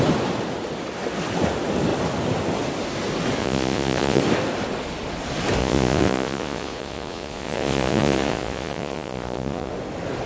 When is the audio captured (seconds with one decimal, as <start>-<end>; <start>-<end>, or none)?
0.0-3.4; 4.2-5.6; 9.7-10.3